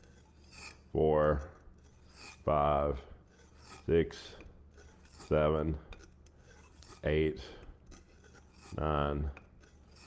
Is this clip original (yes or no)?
yes